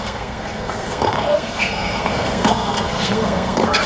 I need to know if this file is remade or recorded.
remade